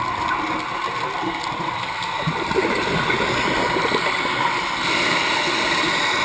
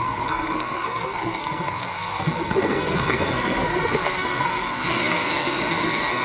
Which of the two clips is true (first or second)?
first